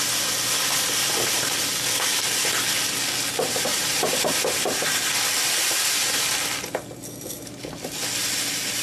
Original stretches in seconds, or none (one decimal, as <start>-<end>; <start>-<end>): 0.0-3.7; 5.4-8.8